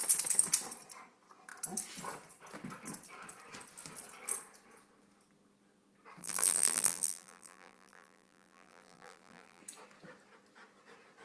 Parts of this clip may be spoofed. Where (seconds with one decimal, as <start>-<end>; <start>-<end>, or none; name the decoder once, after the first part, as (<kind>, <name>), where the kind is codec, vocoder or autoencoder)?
6.2-9.6 (vocoder, BigVGAN v2)

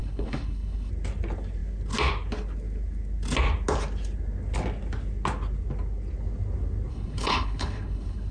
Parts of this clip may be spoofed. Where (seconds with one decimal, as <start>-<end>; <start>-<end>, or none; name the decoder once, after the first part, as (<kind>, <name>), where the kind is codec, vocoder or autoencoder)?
0.0-0.9 (codec, HILCodec); 6.9-8.3

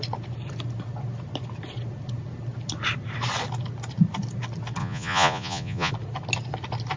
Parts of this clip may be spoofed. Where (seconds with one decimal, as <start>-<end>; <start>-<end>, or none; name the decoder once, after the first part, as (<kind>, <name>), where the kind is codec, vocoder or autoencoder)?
4.8-5.9 (vocoder, Vocos)